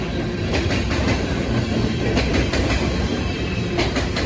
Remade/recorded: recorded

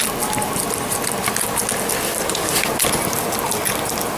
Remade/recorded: recorded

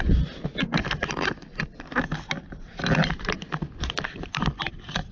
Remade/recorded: recorded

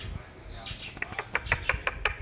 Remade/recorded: recorded